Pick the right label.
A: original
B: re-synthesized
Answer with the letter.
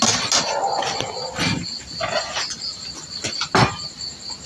A